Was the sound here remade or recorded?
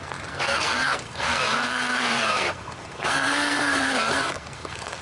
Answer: remade